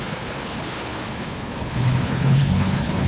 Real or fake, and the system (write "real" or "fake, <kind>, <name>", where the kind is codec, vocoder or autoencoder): fake, codec, HILCodec